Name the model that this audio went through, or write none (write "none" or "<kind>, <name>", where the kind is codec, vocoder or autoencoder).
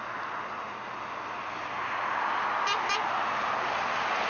none